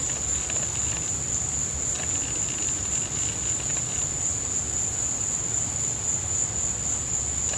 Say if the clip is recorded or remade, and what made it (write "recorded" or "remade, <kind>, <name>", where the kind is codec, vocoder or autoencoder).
recorded